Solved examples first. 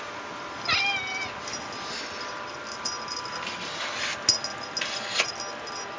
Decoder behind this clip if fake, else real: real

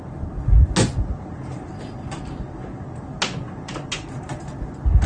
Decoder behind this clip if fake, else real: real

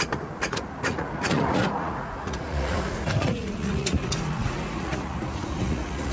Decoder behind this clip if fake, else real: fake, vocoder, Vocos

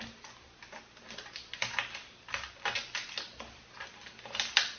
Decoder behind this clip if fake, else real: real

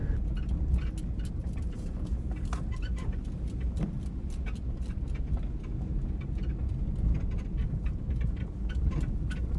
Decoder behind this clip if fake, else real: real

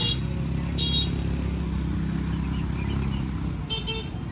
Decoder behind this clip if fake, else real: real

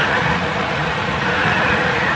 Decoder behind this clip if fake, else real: fake, vocoder, Vocos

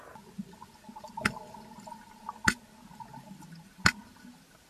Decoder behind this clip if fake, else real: real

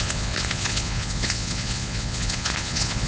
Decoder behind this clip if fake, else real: fake, vocoder, Vocos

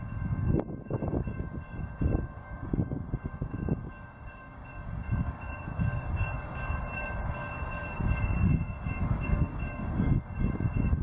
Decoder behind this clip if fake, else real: fake, codec, DAC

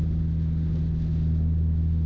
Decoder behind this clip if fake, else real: real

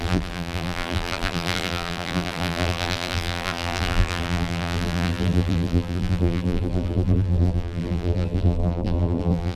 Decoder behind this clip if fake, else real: fake, vocoder, BigVGAN v2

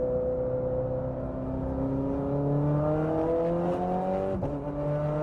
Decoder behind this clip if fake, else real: real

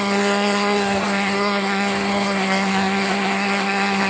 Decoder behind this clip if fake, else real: fake, codec, SNAC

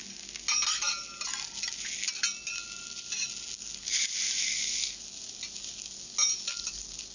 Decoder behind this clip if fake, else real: real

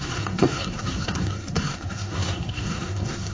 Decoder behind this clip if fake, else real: fake, codec, SNAC